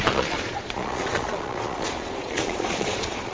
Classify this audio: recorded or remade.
remade